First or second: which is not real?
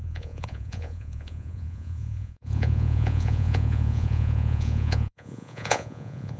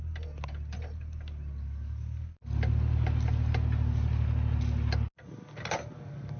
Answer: first